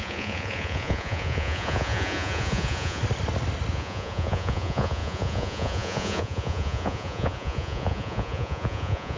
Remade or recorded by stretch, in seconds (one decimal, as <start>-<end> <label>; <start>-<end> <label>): 0.0-3.0 remade; 3.0-3.7 recorded; 3.7-9.2 remade